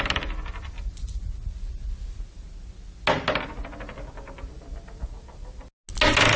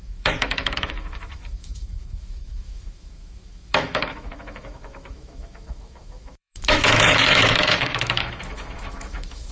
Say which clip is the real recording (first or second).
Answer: first